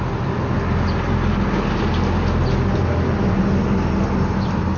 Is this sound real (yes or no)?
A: yes